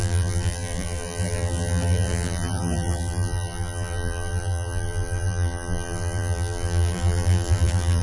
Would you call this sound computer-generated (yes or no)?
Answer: yes